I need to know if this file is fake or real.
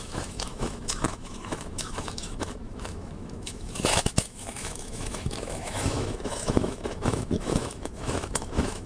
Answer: fake